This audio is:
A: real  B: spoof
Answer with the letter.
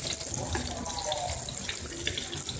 A